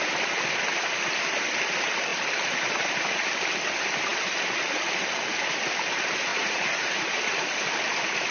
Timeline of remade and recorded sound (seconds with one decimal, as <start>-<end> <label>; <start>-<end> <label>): 0.0-6.3 recorded; 6.3-7.0 remade; 7.0-8.3 recorded